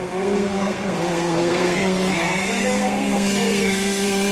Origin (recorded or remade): remade